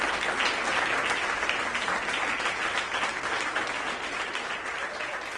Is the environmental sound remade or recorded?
recorded